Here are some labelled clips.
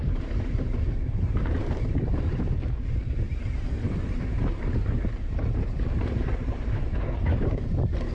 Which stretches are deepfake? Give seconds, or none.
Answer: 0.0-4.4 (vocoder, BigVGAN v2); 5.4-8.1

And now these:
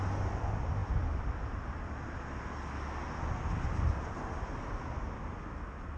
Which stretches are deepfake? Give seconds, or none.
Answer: none

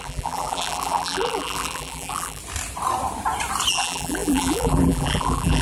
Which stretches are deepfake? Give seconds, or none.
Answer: 0.0-2.4 (vocoder, BigVGAN v2); 3.7-5.6

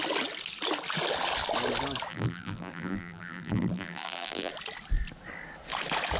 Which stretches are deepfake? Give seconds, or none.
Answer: 2.1-4.5 (vocoder, BigVGAN v2)